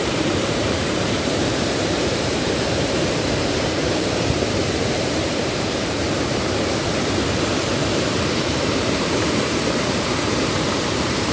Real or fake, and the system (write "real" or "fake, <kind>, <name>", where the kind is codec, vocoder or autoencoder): fake, vocoder, BigVGAN v2